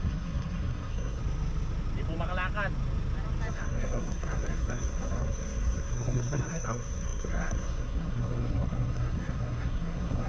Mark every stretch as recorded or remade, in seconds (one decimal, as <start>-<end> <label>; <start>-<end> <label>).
0.0-1.2 remade; 1.2-3.5 recorded; 3.5-10.3 remade